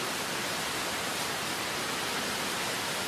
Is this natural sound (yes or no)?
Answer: yes